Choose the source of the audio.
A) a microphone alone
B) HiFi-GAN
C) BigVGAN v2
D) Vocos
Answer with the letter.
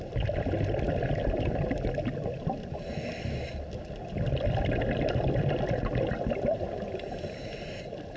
A